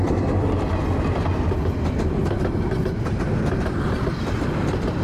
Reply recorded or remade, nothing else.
recorded